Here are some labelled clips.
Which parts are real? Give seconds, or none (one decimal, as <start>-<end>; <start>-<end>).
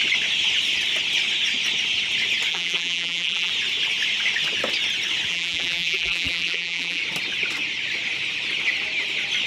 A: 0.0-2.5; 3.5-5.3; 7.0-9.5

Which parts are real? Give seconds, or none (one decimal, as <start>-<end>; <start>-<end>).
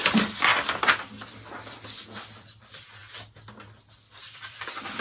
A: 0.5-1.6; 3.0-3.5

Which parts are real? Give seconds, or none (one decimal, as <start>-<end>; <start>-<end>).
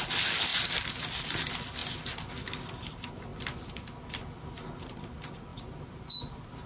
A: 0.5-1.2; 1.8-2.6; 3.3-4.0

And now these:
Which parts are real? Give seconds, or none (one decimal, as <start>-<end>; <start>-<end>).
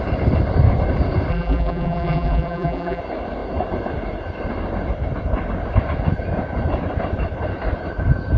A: 0.0-1.3; 3.0-8.4